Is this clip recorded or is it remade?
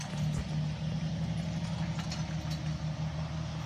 recorded